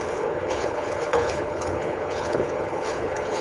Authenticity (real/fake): fake